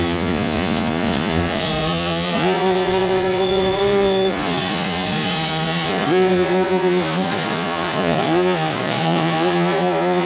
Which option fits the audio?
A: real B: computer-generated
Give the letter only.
B